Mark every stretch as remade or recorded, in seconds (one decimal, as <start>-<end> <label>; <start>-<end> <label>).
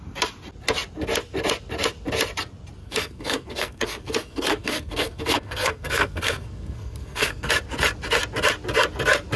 0.0-2.8 recorded; 2.8-7.5 remade; 7.5-9.4 recorded